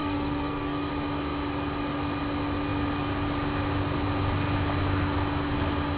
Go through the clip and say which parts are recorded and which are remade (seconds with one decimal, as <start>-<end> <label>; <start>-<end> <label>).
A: 0.0-0.9 remade; 0.9-6.0 recorded